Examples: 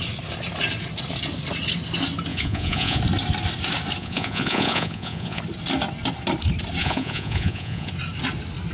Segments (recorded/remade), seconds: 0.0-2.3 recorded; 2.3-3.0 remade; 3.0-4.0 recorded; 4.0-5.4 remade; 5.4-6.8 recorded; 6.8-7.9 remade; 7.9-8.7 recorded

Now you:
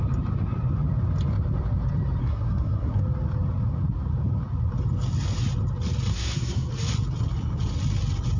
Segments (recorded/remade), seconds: 0.0-2.2 recorded; 2.2-3.0 remade; 3.0-6.1 recorded; 6.1-6.7 remade; 6.7-8.4 recorded

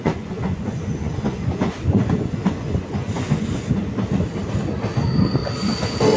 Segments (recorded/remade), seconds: 0.0-3.7 remade; 3.7-6.2 recorded